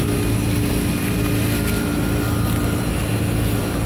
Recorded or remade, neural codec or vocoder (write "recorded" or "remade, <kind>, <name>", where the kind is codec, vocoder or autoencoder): recorded